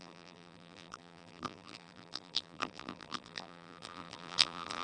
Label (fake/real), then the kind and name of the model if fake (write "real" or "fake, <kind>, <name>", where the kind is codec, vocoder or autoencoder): fake, vocoder, BigVGAN v2